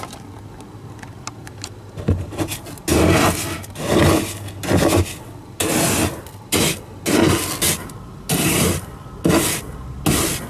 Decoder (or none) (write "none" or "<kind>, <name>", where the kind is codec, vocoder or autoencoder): none